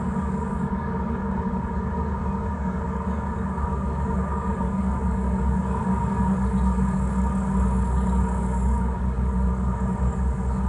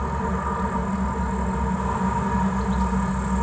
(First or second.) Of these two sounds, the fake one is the first